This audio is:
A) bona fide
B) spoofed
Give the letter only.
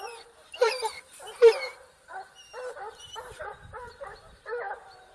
B